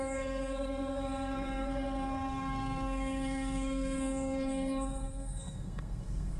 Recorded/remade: remade